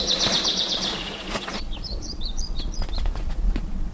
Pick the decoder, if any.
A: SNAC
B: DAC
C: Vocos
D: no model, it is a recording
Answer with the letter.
C